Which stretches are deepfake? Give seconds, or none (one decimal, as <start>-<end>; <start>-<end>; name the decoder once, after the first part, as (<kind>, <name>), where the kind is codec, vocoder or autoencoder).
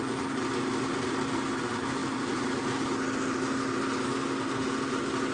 2.0-2.6 (vocoder, BigVGAN v2)